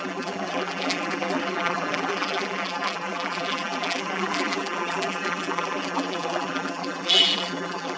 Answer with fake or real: fake